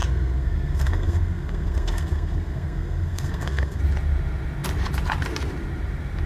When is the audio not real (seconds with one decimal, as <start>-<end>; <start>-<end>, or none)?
0.0-3.8